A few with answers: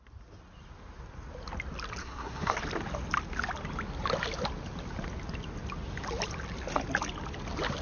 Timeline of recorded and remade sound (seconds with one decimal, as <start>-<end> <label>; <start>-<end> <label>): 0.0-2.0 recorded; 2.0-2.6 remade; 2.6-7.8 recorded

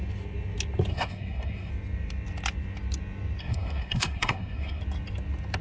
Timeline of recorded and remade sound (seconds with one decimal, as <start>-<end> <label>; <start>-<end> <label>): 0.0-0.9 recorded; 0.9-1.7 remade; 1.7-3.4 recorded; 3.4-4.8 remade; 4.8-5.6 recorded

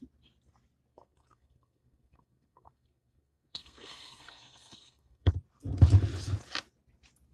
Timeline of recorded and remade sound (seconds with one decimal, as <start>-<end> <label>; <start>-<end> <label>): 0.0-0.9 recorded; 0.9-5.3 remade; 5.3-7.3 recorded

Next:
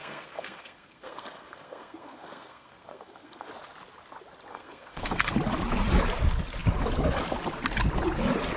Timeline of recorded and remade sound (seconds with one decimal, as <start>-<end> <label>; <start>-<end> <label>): 0.0-3.5 remade; 3.5-4.5 recorded; 4.5-5.3 remade; 5.3-8.6 recorded